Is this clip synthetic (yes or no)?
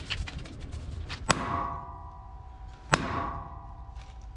no